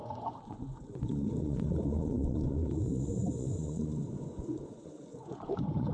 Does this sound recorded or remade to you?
remade